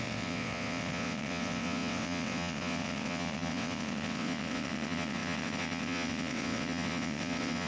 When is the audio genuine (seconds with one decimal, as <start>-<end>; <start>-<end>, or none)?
none